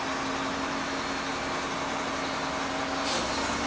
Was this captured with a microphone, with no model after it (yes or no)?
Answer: yes